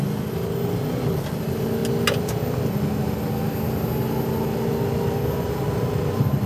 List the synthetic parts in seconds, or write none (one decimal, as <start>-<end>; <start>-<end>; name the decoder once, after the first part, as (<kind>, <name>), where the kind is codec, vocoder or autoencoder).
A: none